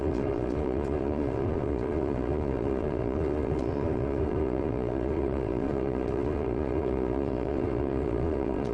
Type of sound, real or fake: fake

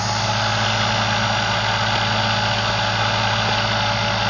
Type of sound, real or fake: real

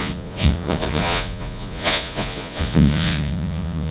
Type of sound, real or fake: fake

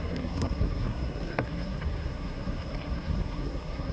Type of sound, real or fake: fake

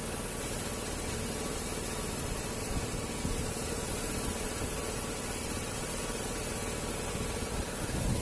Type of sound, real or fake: real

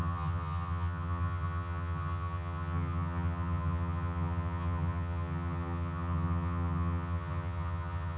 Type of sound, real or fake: fake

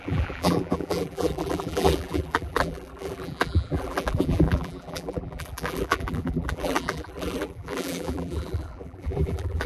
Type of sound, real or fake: fake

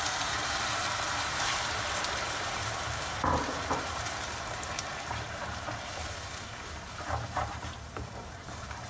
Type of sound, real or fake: fake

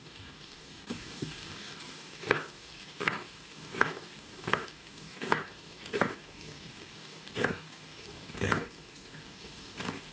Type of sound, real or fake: fake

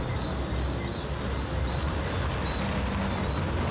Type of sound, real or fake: real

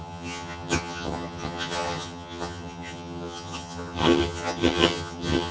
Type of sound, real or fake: fake